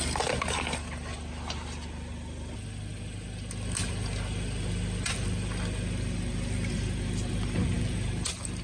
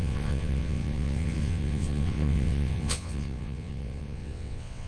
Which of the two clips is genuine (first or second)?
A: first